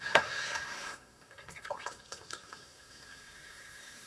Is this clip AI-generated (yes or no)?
yes